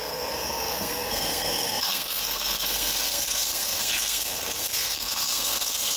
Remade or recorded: remade